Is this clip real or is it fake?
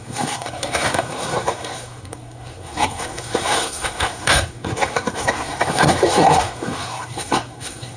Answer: fake